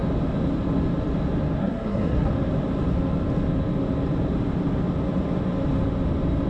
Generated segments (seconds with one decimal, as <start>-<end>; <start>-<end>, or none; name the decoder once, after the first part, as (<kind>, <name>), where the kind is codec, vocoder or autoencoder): 1.6-2.3 (codec, SNAC)